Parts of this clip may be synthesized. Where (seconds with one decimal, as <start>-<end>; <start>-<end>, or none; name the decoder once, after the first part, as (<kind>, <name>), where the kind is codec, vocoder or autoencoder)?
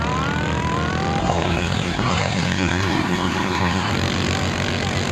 1.2-3.9 (codec, SNAC)